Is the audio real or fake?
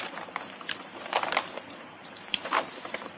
fake